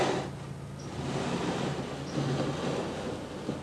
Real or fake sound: real